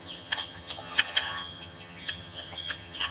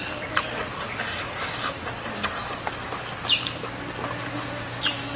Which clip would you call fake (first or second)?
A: first